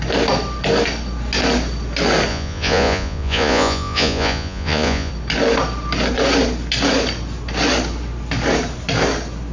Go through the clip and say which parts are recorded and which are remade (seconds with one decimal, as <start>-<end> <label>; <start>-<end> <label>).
0.0-2.3 recorded; 2.3-5.1 remade; 5.1-9.5 recorded